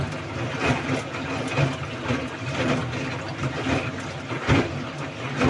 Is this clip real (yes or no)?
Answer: yes